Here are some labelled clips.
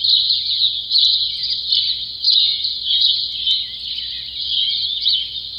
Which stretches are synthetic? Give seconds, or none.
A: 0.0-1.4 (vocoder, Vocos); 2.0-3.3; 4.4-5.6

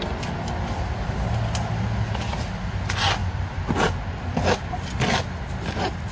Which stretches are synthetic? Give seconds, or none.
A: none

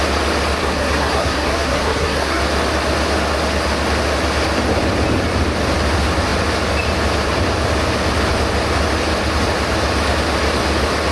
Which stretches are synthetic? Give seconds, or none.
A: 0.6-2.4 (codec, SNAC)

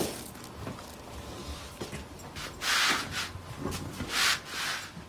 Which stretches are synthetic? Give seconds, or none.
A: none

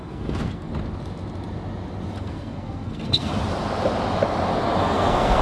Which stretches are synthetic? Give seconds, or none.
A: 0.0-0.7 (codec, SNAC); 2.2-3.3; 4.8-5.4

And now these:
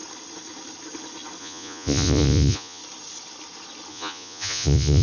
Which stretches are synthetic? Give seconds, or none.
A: 1.4-2.8 (vocoder, Vocos); 3.9-5.0

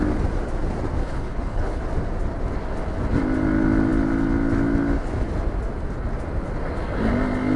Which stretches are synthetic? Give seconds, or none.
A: 1.0-1.8 (codec, HILCodec)